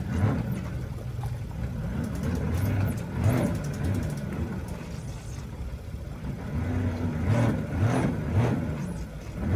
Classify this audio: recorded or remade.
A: recorded